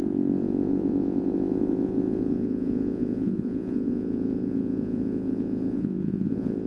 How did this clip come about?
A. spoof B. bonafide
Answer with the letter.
A